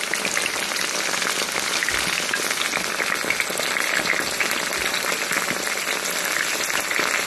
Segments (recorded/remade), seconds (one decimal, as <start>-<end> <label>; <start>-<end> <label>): 0.0-7.3 recorded